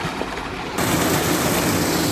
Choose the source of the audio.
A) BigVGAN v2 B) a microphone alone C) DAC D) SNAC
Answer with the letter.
B